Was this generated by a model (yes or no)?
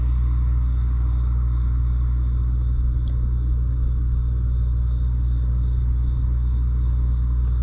no